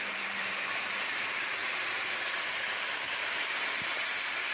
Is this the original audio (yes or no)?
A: no